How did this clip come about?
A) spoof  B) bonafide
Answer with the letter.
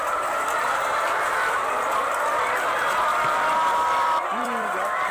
A